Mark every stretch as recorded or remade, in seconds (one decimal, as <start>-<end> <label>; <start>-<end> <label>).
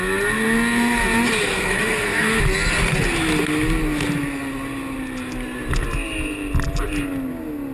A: 0.0-1.5 recorded; 1.5-2.4 remade; 2.4-7.7 recorded